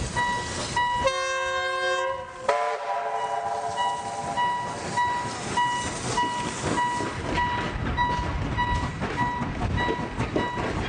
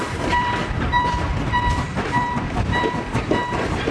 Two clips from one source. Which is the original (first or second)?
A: first